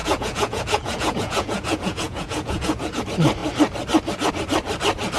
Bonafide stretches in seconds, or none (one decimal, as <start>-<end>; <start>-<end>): 3.0-5.2